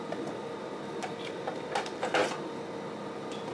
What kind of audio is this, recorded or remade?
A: recorded